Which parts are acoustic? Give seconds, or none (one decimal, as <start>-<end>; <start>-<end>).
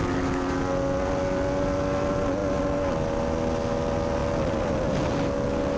0.0-5.8